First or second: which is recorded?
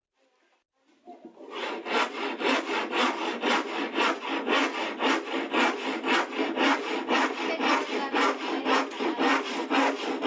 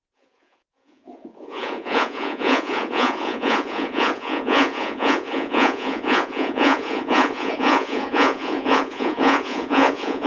first